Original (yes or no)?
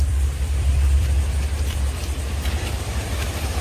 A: no